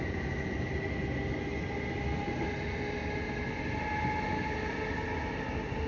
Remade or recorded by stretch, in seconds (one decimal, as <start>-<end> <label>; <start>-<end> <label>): 0.0-5.9 recorded